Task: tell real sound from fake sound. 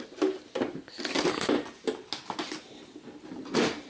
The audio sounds real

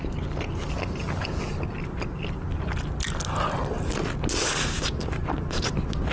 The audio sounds real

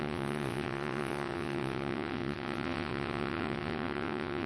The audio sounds fake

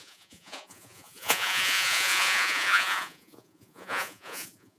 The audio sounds fake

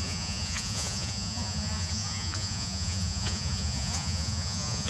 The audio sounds fake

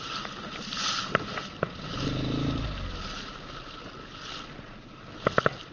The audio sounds real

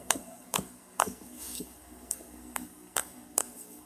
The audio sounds fake